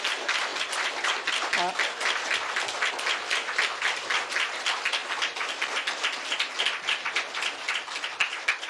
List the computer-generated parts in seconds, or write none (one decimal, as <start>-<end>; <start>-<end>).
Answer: none